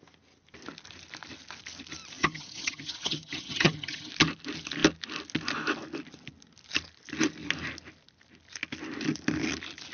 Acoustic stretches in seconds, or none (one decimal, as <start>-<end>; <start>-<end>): 0.0-2.2; 4.1-9.9